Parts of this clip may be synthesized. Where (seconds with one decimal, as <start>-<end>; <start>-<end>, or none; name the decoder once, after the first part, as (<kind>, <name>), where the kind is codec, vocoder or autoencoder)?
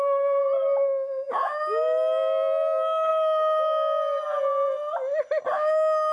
none